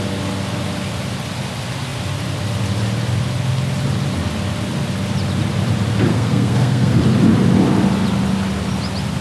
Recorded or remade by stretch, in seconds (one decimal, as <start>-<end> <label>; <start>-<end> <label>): 0.0-6.1 recorded; 6.1-7.0 remade; 7.0-9.2 recorded